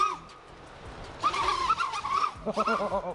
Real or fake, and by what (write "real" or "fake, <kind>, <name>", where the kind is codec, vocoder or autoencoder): real